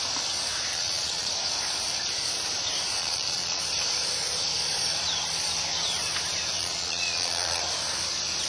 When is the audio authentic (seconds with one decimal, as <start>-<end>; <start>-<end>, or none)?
0.0-0.7; 1.3-3.0; 3.6-6.6; 7.6-8.5